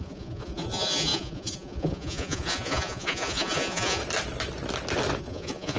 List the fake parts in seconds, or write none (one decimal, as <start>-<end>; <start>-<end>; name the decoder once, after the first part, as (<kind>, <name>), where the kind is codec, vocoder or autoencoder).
0.0-4.0 (vocoder, Vocos); 5.2-5.8